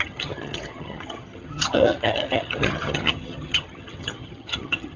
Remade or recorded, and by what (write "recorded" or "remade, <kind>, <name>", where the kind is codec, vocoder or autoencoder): remade, vocoder, HiFi-GAN